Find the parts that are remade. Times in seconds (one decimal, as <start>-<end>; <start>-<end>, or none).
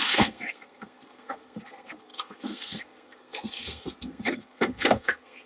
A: 0.0-5.5